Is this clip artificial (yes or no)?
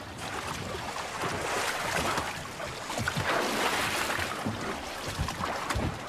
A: no